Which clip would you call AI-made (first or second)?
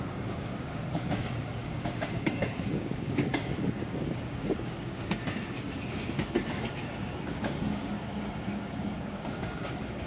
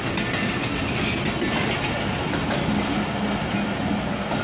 first